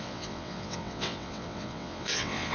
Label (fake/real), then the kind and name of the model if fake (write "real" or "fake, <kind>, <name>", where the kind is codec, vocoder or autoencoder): fake, vocoder, WaveNeXt